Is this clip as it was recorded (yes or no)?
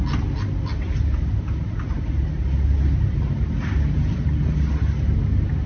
yes